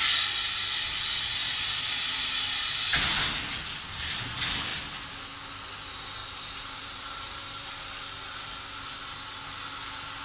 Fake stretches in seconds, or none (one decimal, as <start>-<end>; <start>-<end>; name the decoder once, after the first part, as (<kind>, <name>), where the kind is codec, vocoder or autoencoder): 1.4-2.2 (vocoder, BigVGAN v2); 6.2-7.9